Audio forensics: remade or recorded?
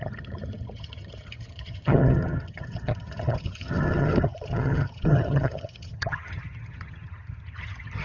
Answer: remade